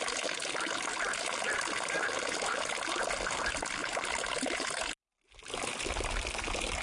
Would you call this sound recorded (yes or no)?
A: yes